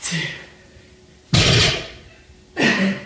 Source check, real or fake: real